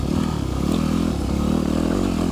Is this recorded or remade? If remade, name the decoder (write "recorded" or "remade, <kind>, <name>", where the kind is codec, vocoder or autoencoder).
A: recorded